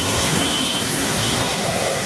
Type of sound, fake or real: fake